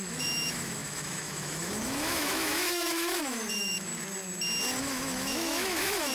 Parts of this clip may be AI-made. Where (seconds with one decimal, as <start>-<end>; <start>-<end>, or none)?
0.0-3.9; 4.8-6.1